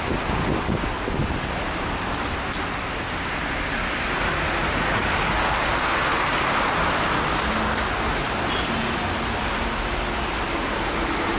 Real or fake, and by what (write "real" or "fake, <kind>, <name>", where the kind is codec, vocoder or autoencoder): real